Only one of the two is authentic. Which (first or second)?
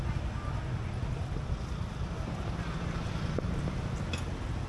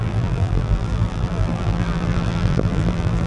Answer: first